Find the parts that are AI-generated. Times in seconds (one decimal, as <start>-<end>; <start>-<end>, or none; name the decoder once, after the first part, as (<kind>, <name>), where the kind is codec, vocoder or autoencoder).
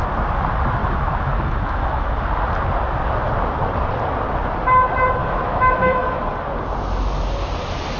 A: 0.8-2.2 (autoencoder, DAC-VAE); 5.2-6.3